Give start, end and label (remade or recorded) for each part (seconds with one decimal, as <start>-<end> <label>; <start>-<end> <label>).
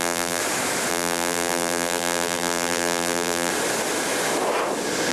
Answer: 0.0-0.4 remade; 0.4-0.9 recorded; 0.9-3.5 remade; 3.5-5.1 recorded